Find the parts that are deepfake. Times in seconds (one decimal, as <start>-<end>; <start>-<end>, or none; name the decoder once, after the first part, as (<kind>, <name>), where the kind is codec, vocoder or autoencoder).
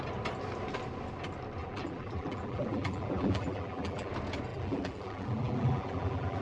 1.6-4.1 (vocoder, BigVGAN v2); 4.5-6.4